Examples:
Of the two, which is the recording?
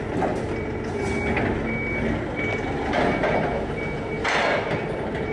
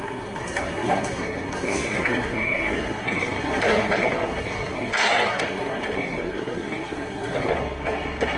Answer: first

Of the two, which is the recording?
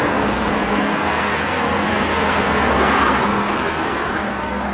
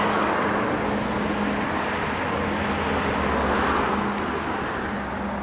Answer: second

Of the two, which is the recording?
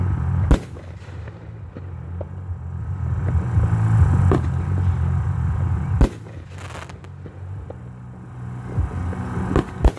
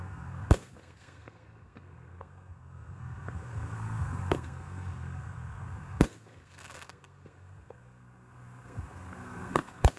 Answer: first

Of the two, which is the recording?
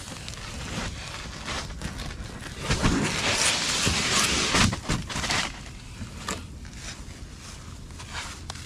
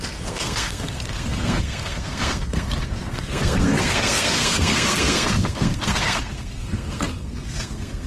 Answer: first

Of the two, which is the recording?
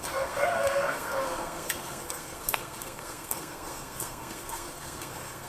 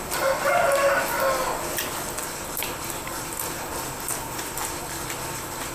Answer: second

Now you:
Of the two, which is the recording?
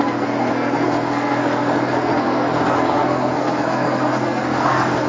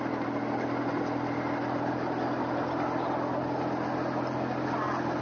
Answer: second